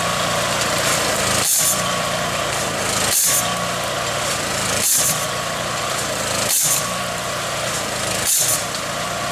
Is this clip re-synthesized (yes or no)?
yes